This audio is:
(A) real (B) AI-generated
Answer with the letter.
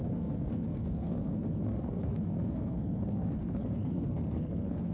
B